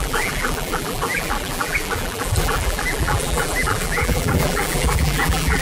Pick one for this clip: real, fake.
fake